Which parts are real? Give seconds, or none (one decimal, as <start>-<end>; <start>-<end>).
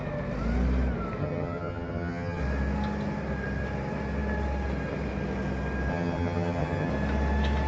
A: 0.0-1.2; 2.4-5.9; 6.9-7.7